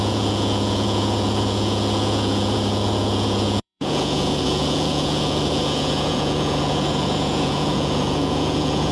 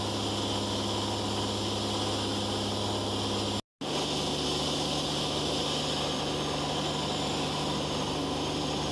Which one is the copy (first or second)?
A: first